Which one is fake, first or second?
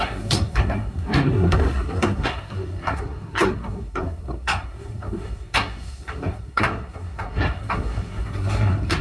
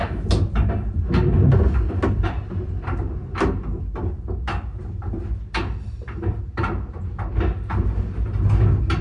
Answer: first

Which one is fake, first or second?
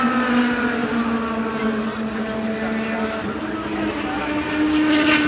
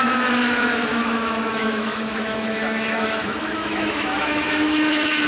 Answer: second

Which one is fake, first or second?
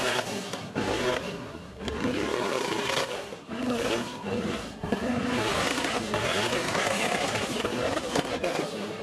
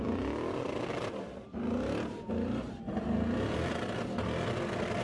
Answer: first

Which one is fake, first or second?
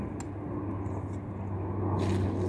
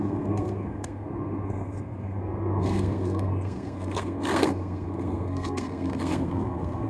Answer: second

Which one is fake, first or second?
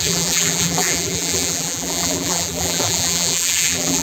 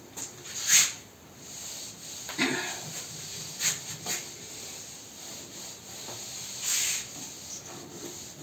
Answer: first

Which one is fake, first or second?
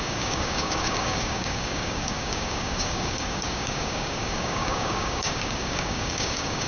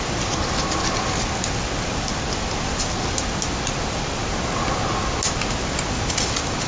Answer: first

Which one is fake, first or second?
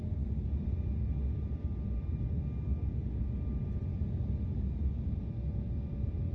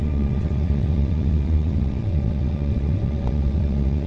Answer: second